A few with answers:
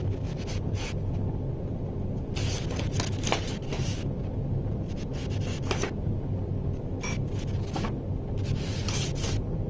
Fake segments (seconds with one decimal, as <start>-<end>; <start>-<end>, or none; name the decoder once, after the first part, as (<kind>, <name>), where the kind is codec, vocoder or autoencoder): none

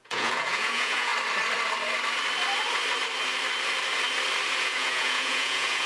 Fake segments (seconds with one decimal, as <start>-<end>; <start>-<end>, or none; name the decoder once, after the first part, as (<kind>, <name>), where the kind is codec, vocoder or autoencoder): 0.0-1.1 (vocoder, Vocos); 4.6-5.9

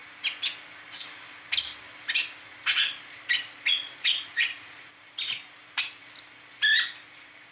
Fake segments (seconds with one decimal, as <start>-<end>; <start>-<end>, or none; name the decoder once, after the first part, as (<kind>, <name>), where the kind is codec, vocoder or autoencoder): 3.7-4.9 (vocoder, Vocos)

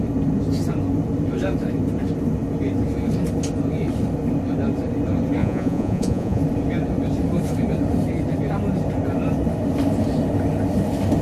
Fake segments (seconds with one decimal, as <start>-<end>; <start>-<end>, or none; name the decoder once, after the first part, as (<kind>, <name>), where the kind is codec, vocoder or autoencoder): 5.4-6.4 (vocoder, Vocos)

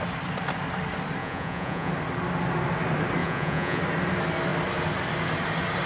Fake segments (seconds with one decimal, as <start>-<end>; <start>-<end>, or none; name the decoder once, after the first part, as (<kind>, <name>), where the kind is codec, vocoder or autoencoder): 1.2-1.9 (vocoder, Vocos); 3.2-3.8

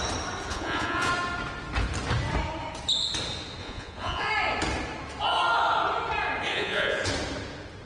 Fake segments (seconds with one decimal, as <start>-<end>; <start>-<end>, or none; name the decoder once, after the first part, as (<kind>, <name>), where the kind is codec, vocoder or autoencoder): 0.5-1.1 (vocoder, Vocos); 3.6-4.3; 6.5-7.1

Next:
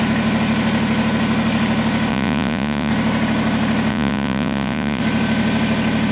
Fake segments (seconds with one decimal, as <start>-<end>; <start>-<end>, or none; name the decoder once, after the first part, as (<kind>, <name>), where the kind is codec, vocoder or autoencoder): 2.1-2.9 (vocoder, Vocos); 3.9-5.0